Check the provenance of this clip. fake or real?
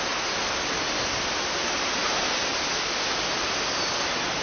real